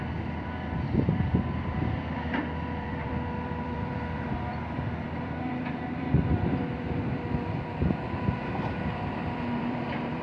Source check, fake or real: fake